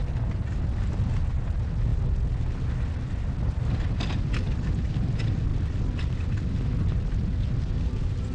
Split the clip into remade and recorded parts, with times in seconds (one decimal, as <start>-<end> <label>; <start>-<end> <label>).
0.0-5.5 recorded; 5.5-7.3 remade; 7.3-8.3 recorded